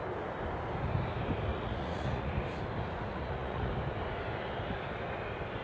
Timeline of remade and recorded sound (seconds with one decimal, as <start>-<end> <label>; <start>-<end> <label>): 0.0-1.5 recorded; 1.5-2.3 remade; 2.3-3.1 recorded; 3.1-3.7 remade; 3.7-5.6 recorded